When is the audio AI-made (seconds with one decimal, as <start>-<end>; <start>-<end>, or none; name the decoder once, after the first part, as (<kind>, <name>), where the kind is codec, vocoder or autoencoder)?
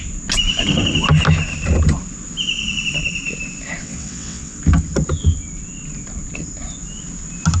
3.8-4.6 (vocoder, WaveNeXt)